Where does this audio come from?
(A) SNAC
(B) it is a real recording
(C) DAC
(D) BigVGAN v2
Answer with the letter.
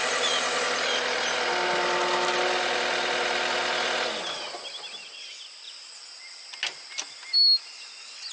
B